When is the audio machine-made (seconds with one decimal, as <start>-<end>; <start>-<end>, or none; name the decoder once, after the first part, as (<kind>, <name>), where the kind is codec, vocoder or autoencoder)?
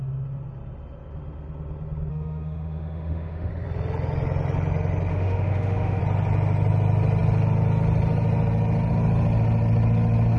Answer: 2.1-3.5 (autoencoder, DAC-VAE); 5.1-6.0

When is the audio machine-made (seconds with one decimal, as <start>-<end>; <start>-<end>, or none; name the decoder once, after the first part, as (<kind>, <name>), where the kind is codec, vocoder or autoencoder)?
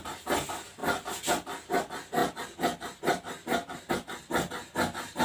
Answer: none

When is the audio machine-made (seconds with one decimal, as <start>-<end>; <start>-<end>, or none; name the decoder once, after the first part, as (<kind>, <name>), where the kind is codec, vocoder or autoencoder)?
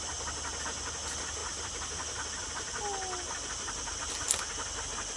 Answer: none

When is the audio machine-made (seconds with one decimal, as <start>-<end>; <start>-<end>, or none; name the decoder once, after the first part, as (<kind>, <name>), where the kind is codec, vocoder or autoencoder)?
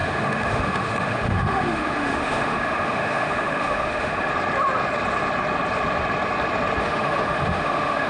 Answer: 0.0-4.3 (autoencoder, DAC-VAE); 6.8-8.1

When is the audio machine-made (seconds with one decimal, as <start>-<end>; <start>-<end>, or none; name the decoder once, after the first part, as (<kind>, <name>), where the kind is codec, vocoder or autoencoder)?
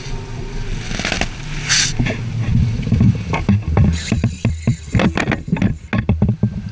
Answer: none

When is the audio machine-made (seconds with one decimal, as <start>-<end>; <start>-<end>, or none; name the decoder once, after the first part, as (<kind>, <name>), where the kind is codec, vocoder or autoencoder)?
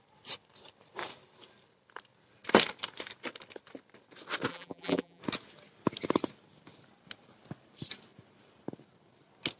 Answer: 4.5-5.2 (vocoder, BigVGAN v2)